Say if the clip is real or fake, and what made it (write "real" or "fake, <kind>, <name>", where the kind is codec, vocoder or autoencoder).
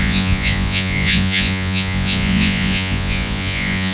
fake, vocoder, Vocos